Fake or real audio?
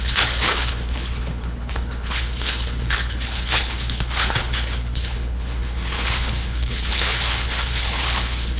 fake